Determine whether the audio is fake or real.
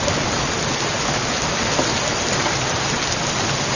real